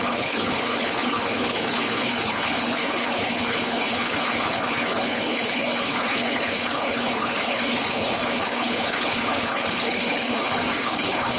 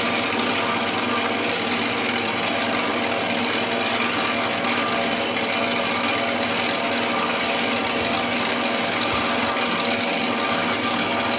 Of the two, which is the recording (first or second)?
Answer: second